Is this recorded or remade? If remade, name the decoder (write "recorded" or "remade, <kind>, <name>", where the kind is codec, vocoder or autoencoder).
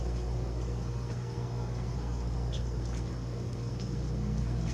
remade, codec, SNAC